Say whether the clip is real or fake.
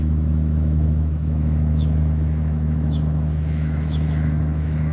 fake